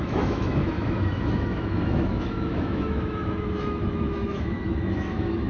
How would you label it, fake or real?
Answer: fake